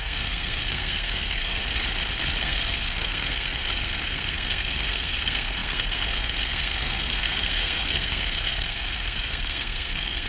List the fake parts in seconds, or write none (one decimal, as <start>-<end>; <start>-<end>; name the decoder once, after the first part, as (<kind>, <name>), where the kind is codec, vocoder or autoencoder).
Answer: 0.0-1.6 (codec, SNAC); 2.4-10.3